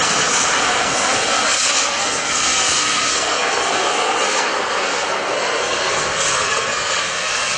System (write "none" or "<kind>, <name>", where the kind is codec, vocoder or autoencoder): codec, SNAC